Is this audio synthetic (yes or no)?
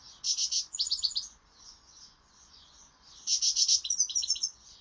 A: yes